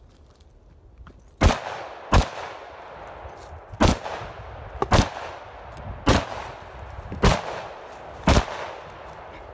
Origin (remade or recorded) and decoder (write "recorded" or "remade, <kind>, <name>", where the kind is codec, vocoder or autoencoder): recorded